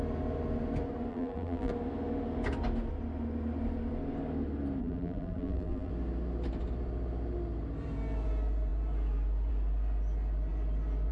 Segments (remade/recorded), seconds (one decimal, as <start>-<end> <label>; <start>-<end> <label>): 0.0-1.1 recorded; 1.1-1.7 remade; 1.7-4.8 recorded; 4.8-5.9 remade; 5.9-11.1 recorded